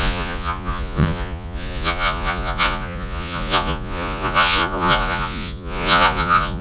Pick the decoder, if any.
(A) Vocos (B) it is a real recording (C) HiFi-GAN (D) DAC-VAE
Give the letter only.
A